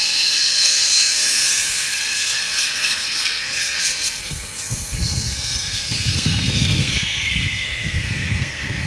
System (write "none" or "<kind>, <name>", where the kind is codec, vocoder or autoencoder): codec, SNAC